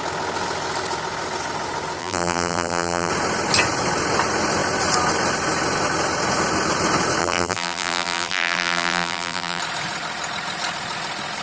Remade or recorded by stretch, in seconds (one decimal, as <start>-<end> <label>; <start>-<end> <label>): 0.0-2.0 recorded; 2.0-3.1 remade; 3.1-7.2 recorded; 7.2-9.6 remade; 9.6-11.4 recorded